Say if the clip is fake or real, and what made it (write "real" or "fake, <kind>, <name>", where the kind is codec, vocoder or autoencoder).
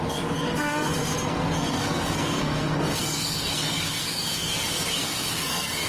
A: fake, codec, SNAC